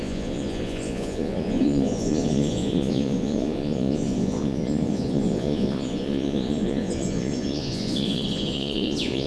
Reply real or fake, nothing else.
fake